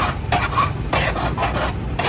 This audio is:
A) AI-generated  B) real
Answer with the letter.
B